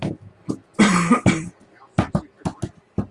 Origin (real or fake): real